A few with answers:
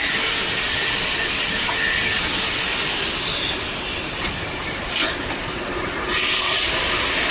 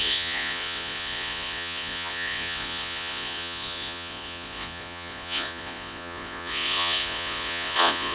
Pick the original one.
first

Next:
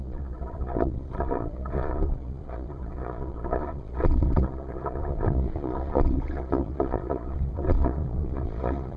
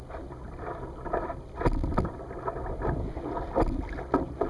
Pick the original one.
second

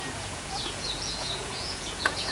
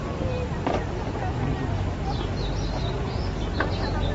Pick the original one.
second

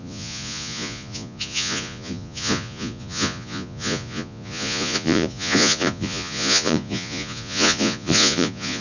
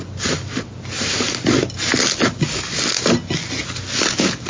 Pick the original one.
second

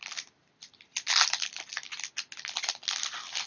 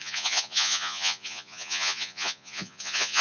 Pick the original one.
first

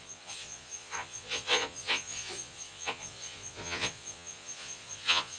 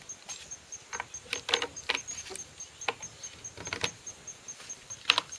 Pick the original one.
second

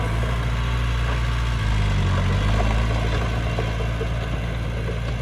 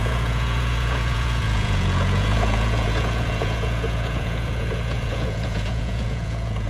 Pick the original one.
first